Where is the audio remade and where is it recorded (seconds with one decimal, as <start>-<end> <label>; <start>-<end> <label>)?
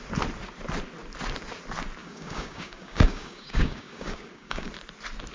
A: 0.0-2.0 recorded; 2.0-4.7 remade; 4.7-5.3 recorded